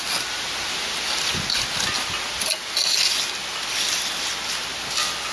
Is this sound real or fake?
real